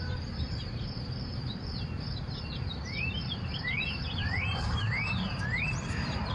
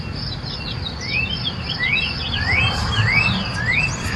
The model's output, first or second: first